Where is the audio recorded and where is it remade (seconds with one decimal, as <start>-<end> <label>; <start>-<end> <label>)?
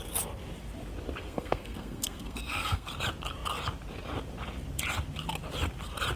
0.0-1.2 recorded; 1.2-2.9 remade; 2.9-6.2 recorded